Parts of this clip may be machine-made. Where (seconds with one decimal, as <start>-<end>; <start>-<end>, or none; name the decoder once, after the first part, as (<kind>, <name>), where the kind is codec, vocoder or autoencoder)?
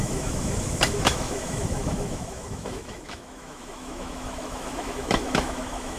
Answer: 0.0-6.0 (autoencoder, DAC-VAE)